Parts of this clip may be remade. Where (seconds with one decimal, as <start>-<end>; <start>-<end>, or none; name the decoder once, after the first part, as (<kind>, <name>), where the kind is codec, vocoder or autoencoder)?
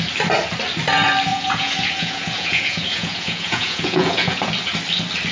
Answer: 1.3-4.5 (vocoder, Vocos)